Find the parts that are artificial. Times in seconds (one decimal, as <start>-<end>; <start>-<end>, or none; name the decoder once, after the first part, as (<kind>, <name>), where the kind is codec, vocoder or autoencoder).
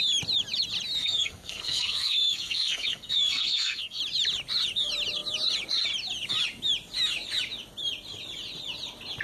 1.0-4.0 (codec, SNAC)